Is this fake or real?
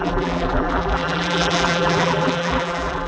fake